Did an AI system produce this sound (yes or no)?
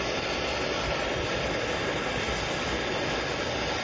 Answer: no